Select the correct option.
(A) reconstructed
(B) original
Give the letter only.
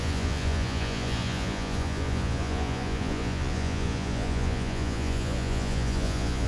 A